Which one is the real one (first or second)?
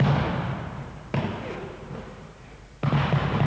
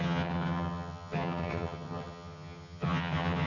first